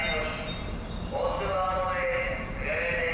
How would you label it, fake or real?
real